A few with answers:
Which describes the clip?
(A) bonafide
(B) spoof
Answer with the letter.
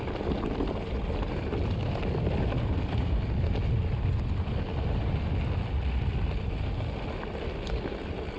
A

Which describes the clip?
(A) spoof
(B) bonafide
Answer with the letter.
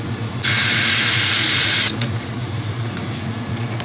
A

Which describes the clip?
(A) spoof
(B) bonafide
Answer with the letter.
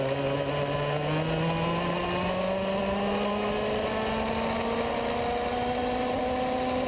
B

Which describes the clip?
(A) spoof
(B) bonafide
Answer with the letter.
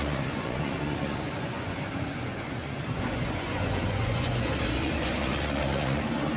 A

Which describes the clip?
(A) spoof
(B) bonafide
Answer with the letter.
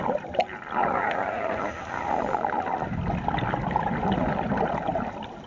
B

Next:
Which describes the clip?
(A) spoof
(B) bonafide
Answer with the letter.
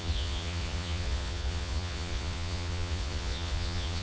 A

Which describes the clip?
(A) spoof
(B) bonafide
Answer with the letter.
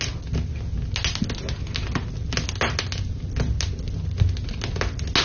B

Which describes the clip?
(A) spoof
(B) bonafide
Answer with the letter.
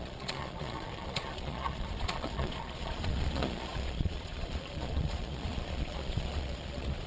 A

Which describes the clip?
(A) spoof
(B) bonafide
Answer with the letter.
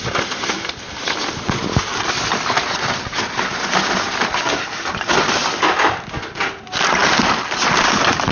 B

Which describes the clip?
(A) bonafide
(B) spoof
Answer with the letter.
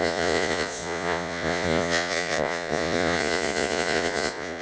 B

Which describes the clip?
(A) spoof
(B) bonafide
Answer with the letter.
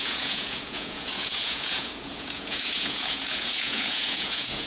A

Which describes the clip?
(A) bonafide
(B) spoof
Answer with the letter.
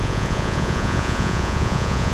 B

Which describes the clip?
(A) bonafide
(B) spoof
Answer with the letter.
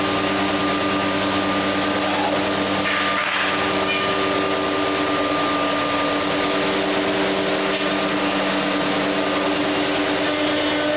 A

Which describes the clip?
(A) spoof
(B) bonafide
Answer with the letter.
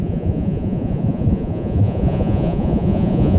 A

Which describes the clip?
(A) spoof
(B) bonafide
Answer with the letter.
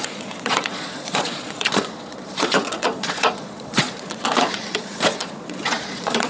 A